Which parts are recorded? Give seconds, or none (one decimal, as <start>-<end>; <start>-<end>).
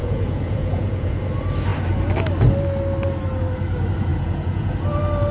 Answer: 1.2-4.1; 4.7-5.3